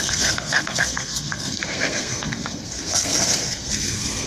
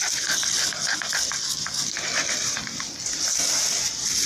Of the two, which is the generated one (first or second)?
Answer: first